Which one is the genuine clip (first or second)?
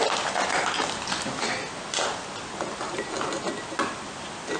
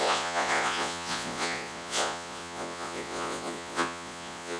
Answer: first